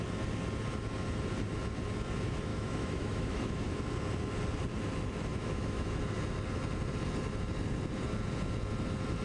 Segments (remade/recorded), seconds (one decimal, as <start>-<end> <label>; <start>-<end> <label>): 0.0-2.5 recorded; 2.5-3.8 remade; 3.8-5.3 recorded; 5.3-6.0 remade; 6.0-9.2 recorded